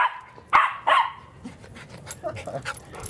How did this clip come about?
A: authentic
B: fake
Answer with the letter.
A